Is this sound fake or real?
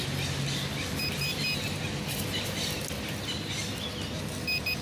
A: real